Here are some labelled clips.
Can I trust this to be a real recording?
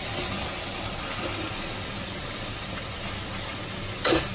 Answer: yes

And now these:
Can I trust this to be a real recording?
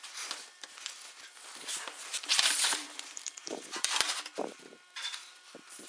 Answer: no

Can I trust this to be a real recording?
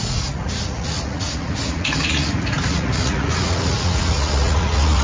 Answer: no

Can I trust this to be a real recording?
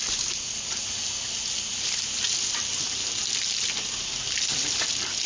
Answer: yes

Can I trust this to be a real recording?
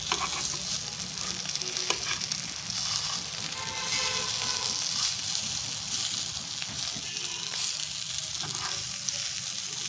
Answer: yes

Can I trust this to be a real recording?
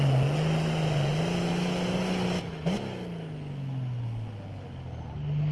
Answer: yes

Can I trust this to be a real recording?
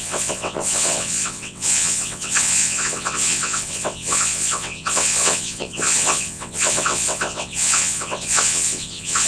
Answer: no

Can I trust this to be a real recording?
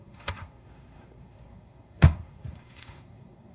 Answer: no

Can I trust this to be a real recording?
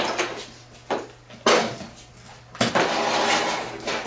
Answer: yes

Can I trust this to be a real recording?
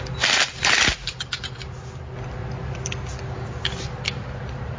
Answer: yes